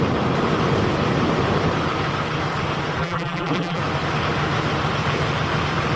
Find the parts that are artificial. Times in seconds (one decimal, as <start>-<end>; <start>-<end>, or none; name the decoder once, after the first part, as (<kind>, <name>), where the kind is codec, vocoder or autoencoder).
3.0-3.8 (vocoder, BigVGAN v2)